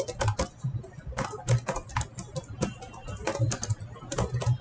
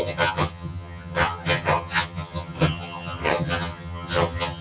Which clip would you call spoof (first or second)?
second